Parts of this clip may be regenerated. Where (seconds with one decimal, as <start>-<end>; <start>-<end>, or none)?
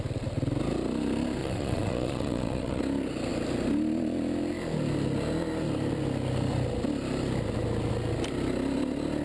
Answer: 1.4-2.8